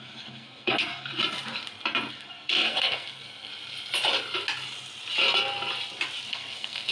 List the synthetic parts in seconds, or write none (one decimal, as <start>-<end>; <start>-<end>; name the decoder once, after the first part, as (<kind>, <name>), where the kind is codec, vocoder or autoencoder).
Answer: 0.0-1.1 (codec, SNAC); 2.1-3.5; 6.3-6.9